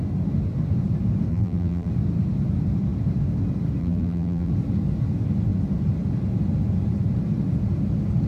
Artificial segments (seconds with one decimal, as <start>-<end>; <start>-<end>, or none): 1.3-1.9; 3.8-4.5

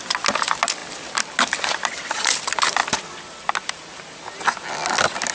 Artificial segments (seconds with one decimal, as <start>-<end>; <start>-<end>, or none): none

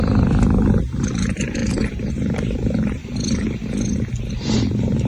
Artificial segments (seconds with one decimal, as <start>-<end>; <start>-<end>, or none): 0.0-3.0; 4.3-5.1